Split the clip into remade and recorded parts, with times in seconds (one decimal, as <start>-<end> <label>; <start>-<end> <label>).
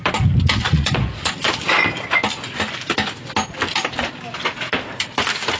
0.0-0.6 recorded; 0.6-1.3 remade; 1.3-5.6 recorded